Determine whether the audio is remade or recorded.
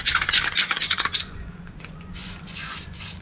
remade